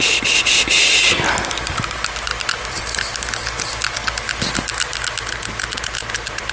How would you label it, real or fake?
real